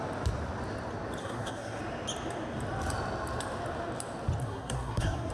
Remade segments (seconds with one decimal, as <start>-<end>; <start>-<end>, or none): 1.2-1.8; 4.4-5.3